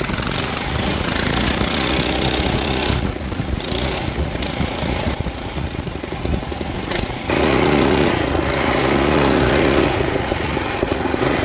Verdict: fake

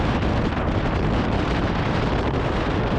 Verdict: real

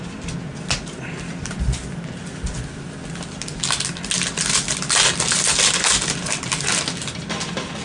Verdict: real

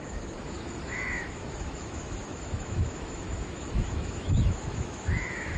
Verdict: fake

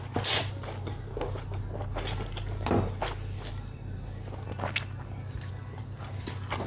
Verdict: real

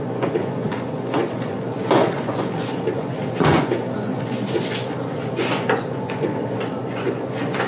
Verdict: fake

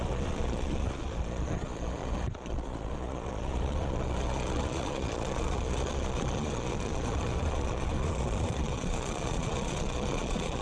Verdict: fake